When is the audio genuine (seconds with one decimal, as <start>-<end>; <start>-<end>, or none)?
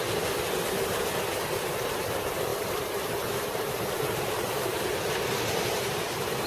0.0-2.5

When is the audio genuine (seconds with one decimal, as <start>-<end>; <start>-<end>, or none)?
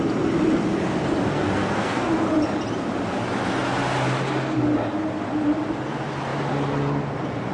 0.0-1.3; 2.1-7.5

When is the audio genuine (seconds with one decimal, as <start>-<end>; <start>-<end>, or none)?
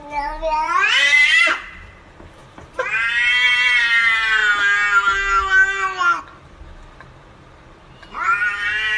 4.4-6.2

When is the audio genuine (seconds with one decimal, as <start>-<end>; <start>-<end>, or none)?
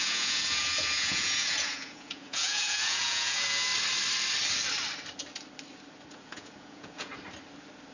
3.7-6.1; 7.1-7.9